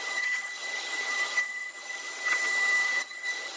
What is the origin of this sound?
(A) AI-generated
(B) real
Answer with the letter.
A